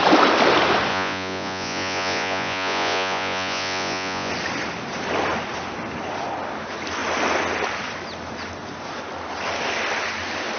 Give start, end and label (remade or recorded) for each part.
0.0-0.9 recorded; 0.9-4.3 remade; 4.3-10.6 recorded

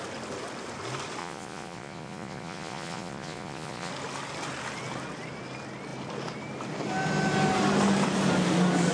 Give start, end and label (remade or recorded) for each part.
0.0-1.2 recorded; 1.2-3.9 remade; 3.9-8.9 recorded

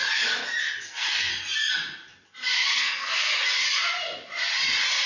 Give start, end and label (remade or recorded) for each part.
0.0-0.6 recorded; 0.6-1.3 remade; 1.3-2.7 recorded; 2.7-3.3 remade; 3.3-5.1 recorded